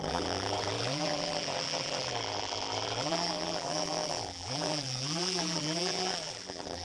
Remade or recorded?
remade